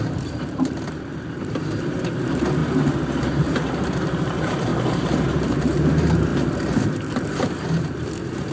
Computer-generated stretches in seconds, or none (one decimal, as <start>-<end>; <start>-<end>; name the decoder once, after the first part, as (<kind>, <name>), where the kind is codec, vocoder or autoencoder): 0.0-2.6 (vocoder, BigVGAN v2); 3.2-8.5